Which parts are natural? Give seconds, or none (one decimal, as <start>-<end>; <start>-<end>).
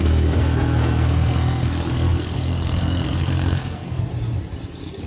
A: 4.1-5.1